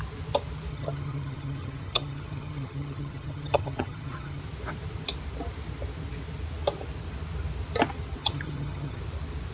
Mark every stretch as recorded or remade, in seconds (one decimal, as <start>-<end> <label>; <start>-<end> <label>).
0.0-0.7 recorded; 0.7-4.4 remade; 4.4-8.2 recorded; 8.2-9.0 remade; 9.0-9.5 recorded